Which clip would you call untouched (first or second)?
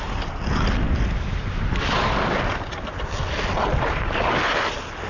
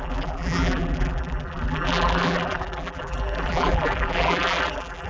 first